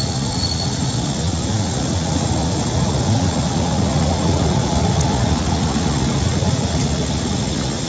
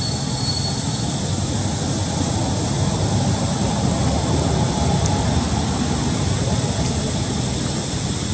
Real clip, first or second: second